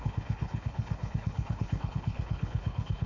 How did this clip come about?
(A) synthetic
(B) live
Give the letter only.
A